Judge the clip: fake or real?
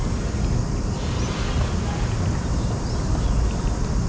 real